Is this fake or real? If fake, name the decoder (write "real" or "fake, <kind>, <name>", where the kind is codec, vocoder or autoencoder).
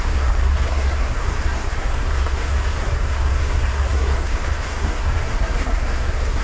fake, codec, SNAC